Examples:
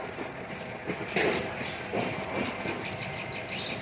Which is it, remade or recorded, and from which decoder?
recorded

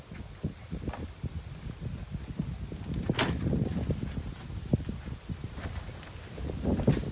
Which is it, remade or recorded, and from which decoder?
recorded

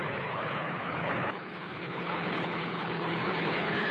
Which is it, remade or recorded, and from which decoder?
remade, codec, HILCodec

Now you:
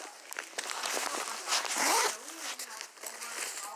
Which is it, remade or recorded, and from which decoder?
recorded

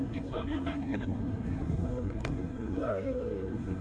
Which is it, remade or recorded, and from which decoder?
remade, codec, SNAC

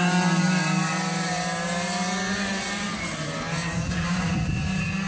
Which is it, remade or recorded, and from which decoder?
recorded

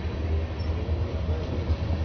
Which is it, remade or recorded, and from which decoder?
recorded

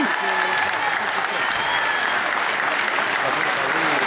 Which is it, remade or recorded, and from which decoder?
recorded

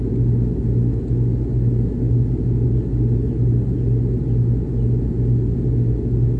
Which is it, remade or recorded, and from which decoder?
recorded